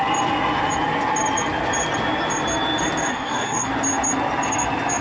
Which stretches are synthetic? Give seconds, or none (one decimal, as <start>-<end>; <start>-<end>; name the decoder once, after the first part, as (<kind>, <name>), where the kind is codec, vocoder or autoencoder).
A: 3.1-3.7 (codec, SNAC)